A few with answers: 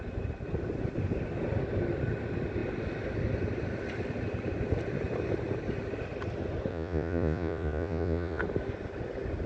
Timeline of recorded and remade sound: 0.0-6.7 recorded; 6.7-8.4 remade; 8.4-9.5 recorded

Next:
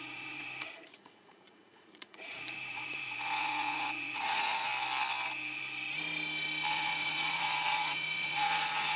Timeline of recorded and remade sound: 0.0-4.7 remade; 4.7-6.7 recorded; 6.7-9.0 remade

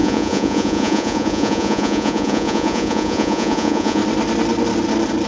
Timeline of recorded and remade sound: 0.0-4.0 remade; 4.0-5.3 recorded

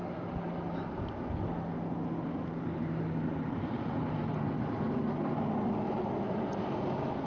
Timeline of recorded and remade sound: 0.0-7.3 recorded

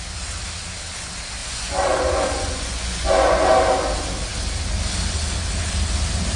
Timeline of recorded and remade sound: 0.0-1.4 recorded; 1.4-3.5 remade; 3.5-6.4 recorded